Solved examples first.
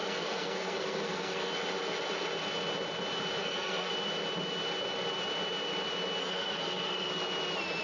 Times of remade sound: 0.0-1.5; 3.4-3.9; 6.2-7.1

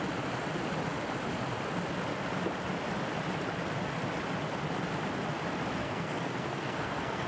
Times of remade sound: 5.8-7.3

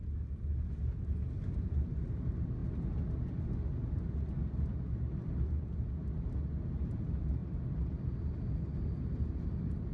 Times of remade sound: none